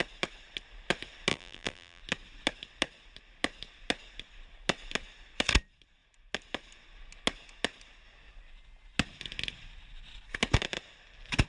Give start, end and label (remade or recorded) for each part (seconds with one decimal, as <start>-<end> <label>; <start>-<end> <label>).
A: 0.0-1.3 recorded; 1.3-2.0 remade; 2.0-11.5 recorded